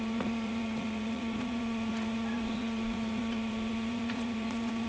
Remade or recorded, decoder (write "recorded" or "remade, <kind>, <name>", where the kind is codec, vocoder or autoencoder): remade, vocoder, Vocos